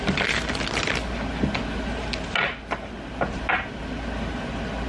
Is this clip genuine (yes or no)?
yes